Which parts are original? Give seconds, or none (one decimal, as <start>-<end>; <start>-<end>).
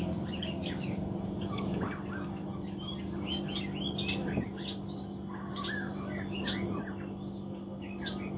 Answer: 0.0-8.4